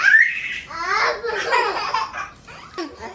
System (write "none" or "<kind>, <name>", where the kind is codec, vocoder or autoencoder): none